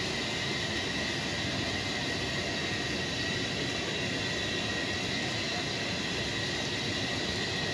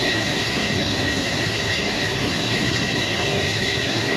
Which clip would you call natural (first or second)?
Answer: first